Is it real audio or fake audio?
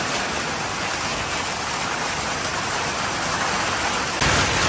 real